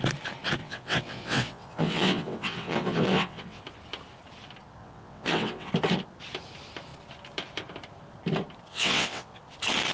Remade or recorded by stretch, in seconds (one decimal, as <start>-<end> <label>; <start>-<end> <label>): 0.0-0.6 recorded; 0.6-3.6 remade; 3.6-4.8 recorded; 4.8-5.7 remade; 5.7-8.7 recorded; 8.7-9.4 remade; 9.4-9.9 recorded